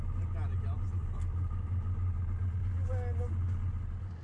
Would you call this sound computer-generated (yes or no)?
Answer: no